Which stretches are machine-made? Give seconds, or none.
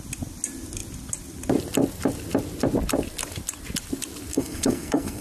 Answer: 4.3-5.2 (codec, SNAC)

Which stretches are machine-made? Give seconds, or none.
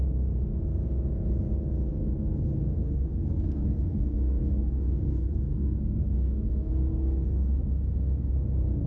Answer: 1.9-6.7 (codec, SNAC)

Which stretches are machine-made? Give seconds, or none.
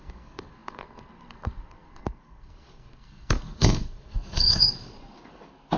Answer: 0.0-5.8 (codec, SNAC)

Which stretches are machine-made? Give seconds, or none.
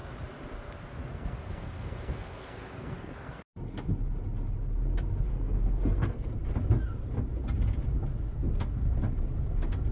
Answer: 1.1-3.5 (codec, SNAC); 5.3-6.3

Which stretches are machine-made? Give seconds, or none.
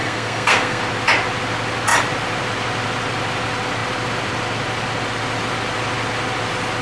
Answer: 0.0-0.8 (codec, SNAC)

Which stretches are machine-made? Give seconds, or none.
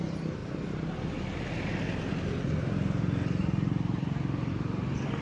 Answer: none